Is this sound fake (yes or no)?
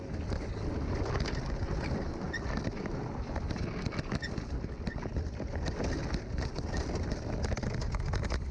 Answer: no